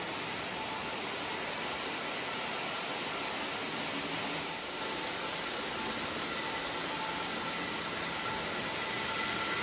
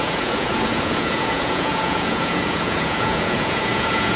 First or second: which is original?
first